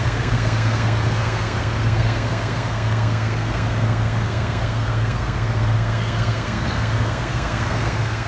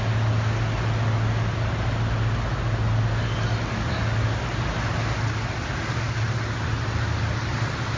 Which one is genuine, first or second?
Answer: second